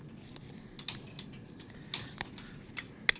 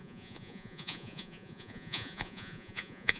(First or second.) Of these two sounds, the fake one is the second